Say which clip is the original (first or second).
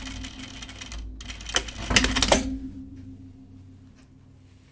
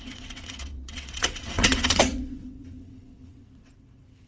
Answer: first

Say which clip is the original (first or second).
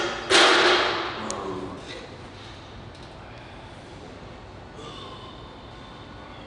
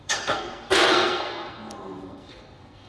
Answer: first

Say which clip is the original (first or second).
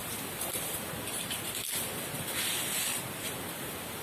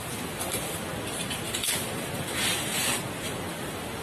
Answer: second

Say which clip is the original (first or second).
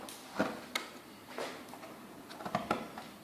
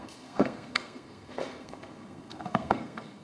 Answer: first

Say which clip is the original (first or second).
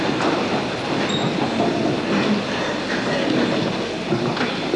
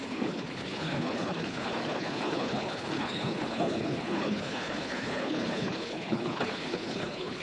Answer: first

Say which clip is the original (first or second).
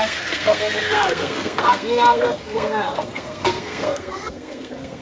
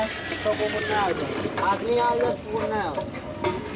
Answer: second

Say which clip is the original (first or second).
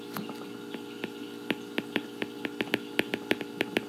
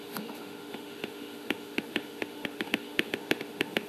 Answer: first